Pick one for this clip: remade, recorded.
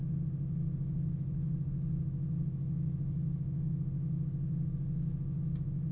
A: recorded